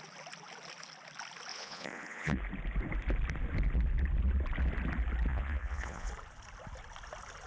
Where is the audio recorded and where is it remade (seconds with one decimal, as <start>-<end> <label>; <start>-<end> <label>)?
0.0-1.5 recorded; 1.5-2.4 remade; 2.4-5.3 recorded; 5.3-6.1 remade; 6.1-7.5 recorded